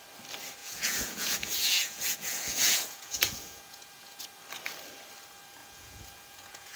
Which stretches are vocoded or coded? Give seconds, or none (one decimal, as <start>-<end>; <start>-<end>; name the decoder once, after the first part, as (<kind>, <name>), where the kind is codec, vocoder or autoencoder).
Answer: 0.6-4.2 (vocoder, Vocos); 5.6-6.8